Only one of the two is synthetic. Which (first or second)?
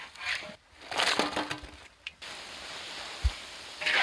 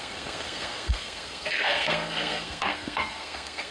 second